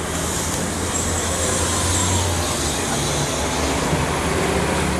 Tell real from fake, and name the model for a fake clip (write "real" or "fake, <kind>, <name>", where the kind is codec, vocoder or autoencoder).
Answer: real